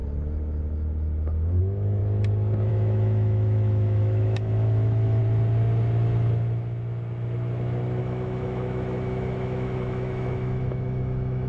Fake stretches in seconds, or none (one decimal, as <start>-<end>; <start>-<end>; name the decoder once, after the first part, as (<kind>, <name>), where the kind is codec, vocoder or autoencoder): 1.6-2.0 (autoencoder, DAC-VAE); 2.7-5.2; 8.0-11.5

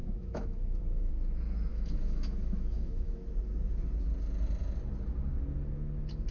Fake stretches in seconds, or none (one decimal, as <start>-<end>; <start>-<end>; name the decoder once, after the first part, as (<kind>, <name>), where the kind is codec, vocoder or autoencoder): 0.0-1.1 (autoencoder, DAC-VAE); 1.7-3.2

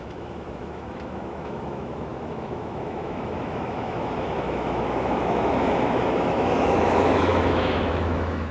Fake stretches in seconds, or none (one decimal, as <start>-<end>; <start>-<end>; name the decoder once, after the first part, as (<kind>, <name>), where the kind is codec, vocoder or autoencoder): 0.0-8.5 (autoencoder, DAC-VAE)

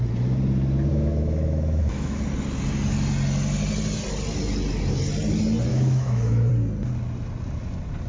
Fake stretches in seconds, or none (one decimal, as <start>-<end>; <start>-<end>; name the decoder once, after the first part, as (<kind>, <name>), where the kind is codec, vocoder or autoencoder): 0.9-2.2 (autoencoder, DAC-VAE); 5.7-6.5